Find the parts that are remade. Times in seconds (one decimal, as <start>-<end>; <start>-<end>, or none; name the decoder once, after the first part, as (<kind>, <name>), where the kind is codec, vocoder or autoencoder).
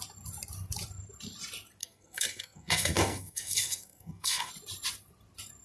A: 1.8-4.5 (codec, SNAC)